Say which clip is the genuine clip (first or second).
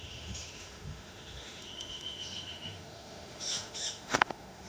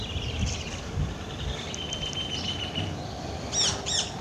second